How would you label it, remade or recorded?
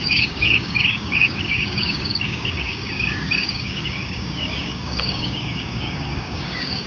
remade